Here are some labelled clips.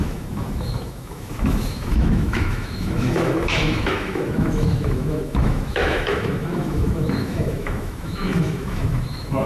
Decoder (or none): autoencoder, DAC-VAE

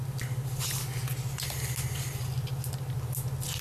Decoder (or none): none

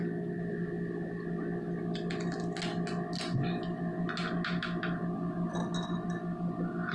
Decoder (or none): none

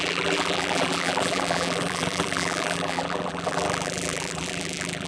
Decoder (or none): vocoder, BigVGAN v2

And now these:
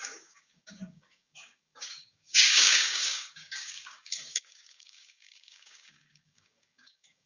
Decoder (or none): codec, DAC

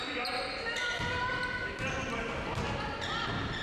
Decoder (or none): none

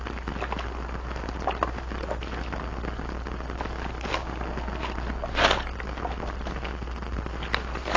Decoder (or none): none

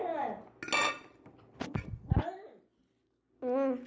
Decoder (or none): none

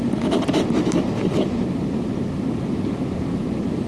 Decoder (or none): none